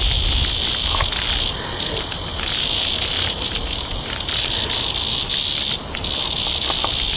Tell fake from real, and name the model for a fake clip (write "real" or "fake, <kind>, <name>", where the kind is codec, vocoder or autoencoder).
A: real